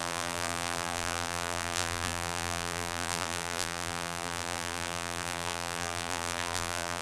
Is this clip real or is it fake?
fake